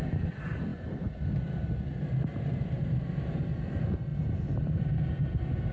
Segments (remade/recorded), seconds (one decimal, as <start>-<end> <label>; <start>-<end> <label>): 0.0-5.7 recorded